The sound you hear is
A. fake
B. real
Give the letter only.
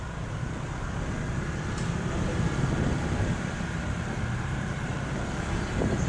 A